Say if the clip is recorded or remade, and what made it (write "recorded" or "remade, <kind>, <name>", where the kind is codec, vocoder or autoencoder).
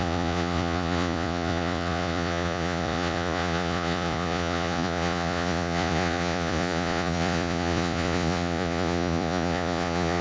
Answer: remade, vocoder, Vocos